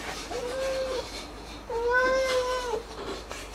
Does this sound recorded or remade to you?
remade